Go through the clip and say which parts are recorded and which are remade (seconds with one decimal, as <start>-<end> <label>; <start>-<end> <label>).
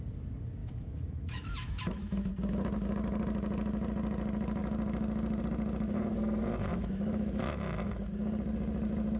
0.0-0.6 recorded; 0.6-2.3 remade; 2.3-6.7 recorded; 6.7-7.4 remade; 7.4-9.2 recorded